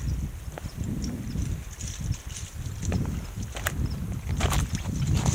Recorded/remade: recorded